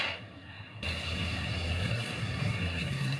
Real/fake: fake